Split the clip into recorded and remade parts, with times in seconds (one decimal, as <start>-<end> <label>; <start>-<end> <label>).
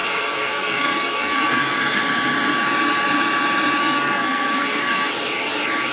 0.0-2.0 remade; 2.0-3.8 recorded; 3.8-5.1 remade; 5.1-5.9 recorded